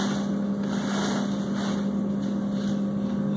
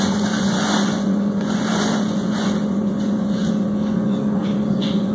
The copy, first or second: second